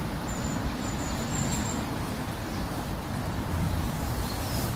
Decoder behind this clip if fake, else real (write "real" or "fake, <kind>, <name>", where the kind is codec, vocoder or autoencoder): fake, vocoder, BigVGAN v2